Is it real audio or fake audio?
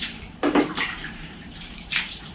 fake